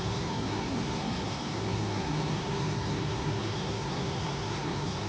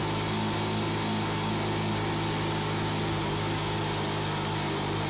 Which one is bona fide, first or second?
second